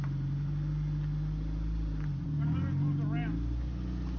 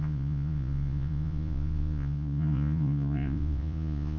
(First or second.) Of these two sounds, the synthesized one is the second